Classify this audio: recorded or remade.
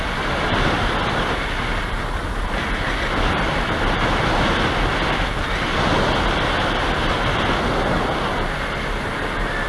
recorded